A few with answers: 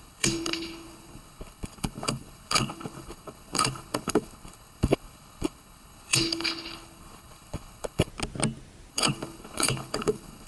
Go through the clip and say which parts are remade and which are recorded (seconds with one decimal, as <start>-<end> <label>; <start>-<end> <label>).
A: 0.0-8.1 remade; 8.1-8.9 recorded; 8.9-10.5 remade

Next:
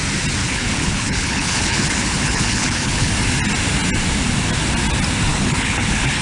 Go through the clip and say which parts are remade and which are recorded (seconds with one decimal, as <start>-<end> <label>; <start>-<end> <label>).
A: 0.0-0.4 recorded; 0.4-3.1 remade; 3.1-5.3 recorded; 5.3-6.2 remade

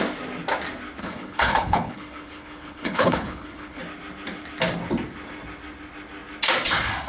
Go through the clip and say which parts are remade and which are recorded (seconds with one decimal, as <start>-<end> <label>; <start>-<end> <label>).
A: 0.0-1.0 recorded; 1.0-3.8 remade; 3.8-7.1 recorded

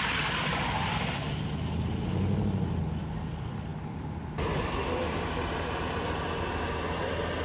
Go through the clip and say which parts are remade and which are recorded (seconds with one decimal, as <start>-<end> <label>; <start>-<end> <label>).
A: 0.0-7.4 recorded